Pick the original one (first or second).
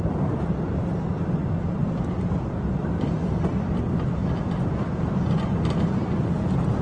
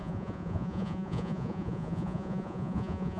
first